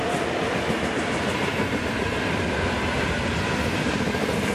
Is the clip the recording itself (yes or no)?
yes